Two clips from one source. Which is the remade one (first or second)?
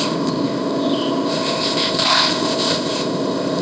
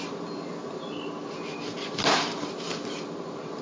first